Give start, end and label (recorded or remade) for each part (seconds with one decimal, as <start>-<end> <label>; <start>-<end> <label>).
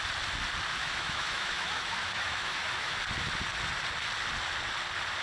0.0-0.8 recorded; 0.8-3.0 remade; 3.0-5.2 recorded